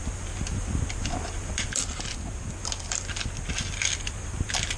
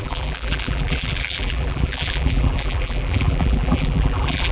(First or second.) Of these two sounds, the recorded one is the first